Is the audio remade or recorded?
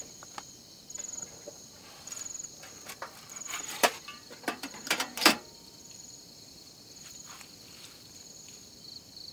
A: remade